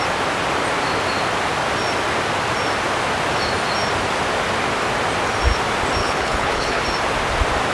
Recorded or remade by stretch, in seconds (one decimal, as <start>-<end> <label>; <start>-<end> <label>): 0.0-6.0 recorded; 6.0-6.8 remade; 6.8-7.7 recorded